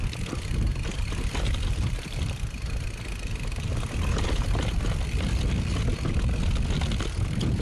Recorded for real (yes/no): yes